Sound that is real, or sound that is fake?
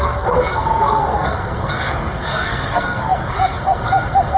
fake